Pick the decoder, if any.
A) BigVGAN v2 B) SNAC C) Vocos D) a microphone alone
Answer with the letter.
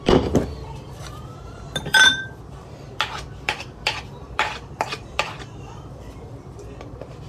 A